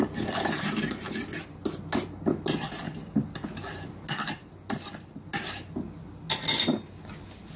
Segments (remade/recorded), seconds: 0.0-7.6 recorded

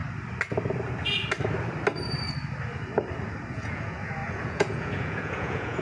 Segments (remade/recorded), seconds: 0.0-3.5 recorded; 3.5-5.8 remade

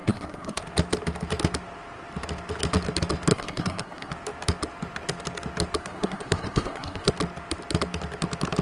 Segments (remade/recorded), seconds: 0.0-0.6 remade; 0.6-3.3 recorded; 3.3-4.1 remade; 4.1-5.8 recorded; 5.8-7.1 remade; 7.1-8.6 recorded

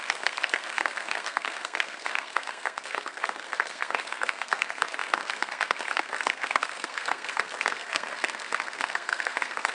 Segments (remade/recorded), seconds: 0.0-9.7 remade

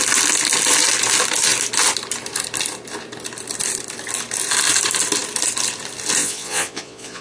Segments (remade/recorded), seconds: 0.0-6.2 recorded; 6.2-7.2 remade

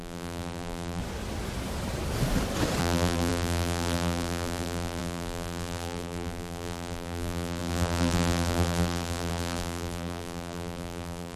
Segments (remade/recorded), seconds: 0.0-1.0 remade; 1.0-2.8 recorded; 2.8-11.4 remade

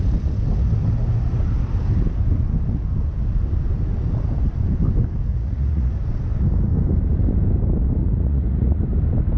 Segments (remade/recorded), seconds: 0.0-5.3 recorded; 5.3-5.9 remade; 5.9-8.0 recorded; 8.0-8.8 remade; 8.8-9.4 recorded